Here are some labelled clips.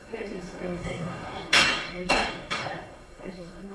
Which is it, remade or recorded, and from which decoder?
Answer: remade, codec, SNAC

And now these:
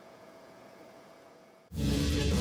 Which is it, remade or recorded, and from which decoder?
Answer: remade, vocoder, Vocos